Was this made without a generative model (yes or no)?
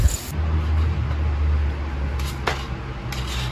yes